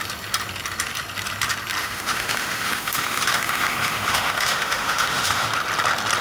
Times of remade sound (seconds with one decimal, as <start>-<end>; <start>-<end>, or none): 1.8-5.5